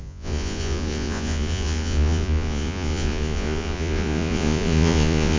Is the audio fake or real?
fake